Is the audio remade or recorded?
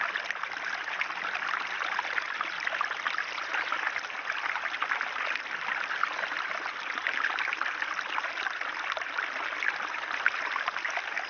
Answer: recorded